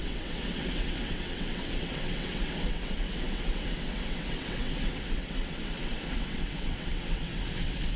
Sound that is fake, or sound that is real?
fake